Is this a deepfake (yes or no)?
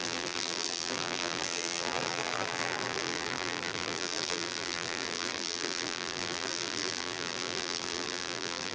yes